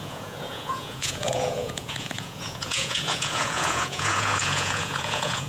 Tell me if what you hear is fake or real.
fake